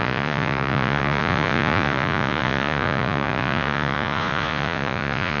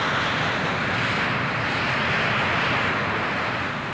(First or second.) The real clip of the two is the second